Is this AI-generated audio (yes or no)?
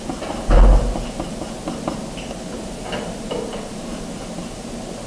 no